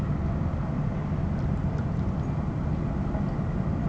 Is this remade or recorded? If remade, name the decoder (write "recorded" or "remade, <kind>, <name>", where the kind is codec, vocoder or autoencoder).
recorded